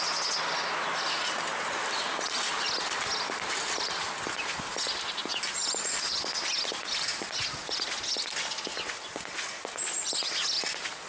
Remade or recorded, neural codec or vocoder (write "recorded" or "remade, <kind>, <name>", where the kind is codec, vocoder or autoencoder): recorded